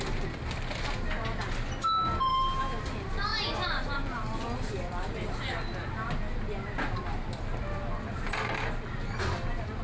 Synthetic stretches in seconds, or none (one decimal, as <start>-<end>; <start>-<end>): 2.3-2.8